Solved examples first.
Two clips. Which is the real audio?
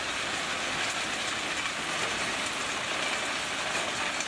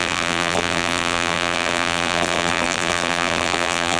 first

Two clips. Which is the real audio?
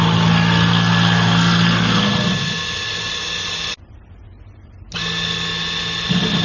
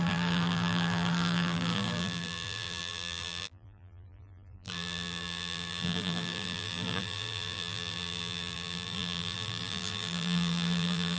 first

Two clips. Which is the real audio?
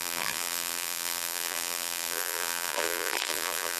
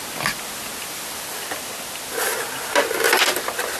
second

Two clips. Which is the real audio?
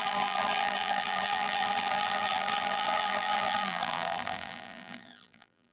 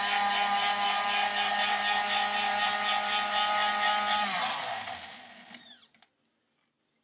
second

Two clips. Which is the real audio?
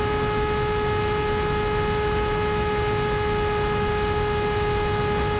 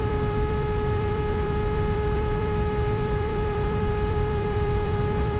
first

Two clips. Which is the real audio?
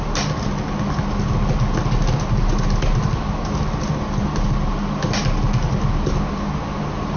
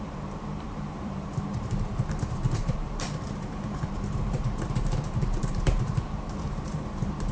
first